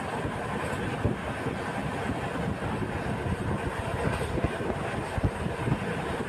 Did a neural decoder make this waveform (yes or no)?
no